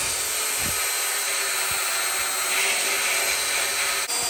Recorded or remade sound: recorded